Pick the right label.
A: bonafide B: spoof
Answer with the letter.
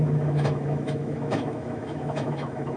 B